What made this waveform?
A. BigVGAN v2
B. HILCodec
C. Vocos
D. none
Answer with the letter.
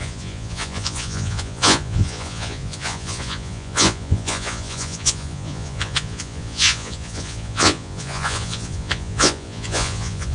C